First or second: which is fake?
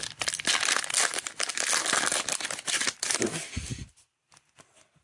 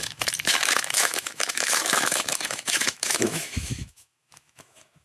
second